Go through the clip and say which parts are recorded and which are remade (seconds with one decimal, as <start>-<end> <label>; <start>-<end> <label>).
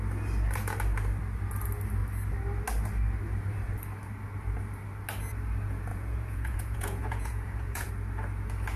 0.0-5.9 recorded; 5.9-7.9 remade; 7.9-8.8 recorded